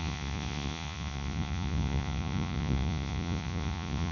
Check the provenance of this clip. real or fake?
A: fake